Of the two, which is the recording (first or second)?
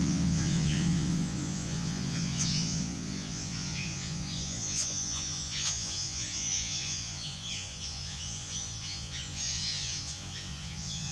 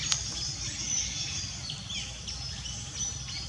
second